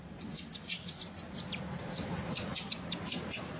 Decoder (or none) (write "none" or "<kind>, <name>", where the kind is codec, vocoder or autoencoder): none